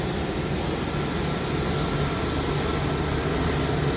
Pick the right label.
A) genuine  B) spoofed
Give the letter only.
A